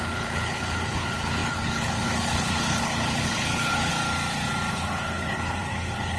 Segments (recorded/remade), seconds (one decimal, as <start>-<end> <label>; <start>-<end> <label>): 0.0-3.9 remade; 3.9-4.7 recorded; 4.7-6.2 remade